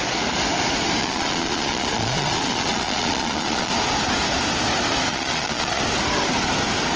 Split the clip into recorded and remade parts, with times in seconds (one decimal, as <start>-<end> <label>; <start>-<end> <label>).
0.0-1.0 recorded; 1.0-3.7 remade; 3.7-5.1 recorded; 5.1-5.8 remade; 5.8-7.0 recorded